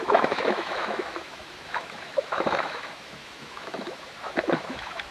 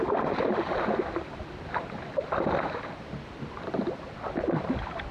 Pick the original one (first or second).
second